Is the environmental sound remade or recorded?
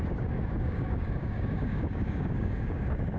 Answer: remade